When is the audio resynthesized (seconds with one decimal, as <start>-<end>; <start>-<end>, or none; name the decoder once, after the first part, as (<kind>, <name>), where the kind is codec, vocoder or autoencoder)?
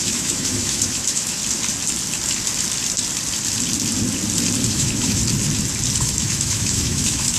0.0-1.4 (autoencoder, DAC-VAE); 4.7-5.2; 6.0-7.4